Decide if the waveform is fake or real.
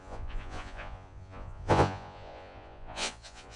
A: fake